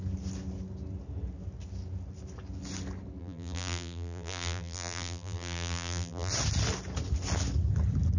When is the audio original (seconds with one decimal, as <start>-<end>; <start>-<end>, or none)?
0.0-3.2; 6.3-8.2